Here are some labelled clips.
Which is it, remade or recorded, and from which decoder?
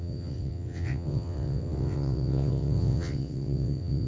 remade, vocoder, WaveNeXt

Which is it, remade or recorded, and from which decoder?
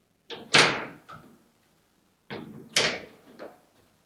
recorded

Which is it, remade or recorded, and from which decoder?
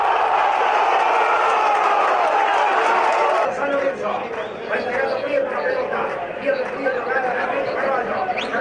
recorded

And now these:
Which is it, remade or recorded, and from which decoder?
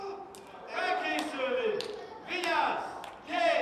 recorded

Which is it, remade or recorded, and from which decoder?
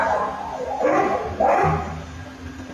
recorded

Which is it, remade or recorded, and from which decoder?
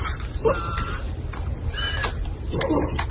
recorded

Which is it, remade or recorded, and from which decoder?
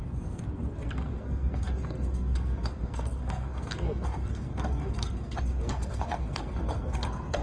remade, codec, SNAC